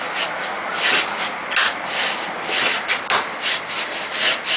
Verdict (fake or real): real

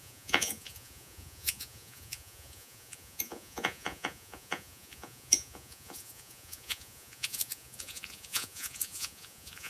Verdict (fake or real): fake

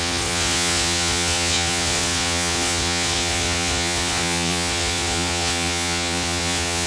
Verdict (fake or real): fake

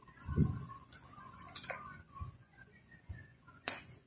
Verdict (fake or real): fake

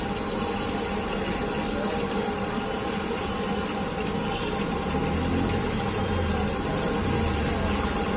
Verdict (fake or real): real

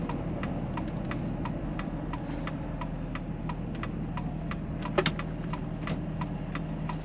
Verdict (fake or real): real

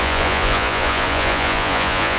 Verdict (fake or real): fake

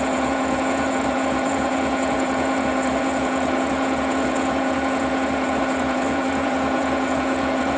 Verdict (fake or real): fake